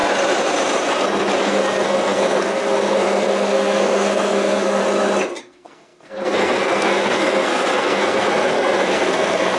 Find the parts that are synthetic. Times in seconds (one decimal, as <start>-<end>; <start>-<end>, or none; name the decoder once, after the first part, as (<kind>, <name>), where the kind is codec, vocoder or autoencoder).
1.4-4.8 (codec, SNAC); 5.4-9.6